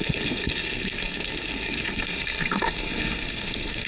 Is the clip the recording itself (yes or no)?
no